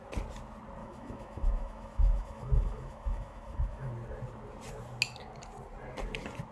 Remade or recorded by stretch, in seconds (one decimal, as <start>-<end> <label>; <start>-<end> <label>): 0.0-0.8 recorded; 0.8-3.9 remade; 3.9-6.5 recorded